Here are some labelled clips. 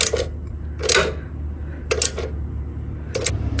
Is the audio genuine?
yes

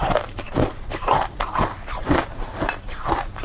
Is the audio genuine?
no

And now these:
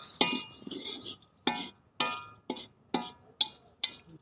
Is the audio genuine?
yes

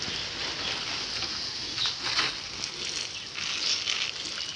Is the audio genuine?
yes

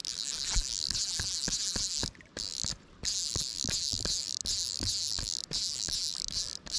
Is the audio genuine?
yes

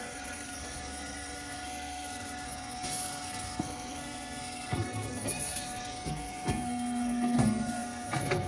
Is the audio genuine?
no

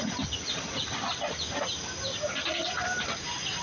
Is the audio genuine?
yes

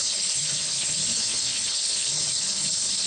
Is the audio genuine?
no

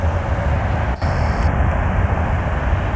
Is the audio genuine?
yes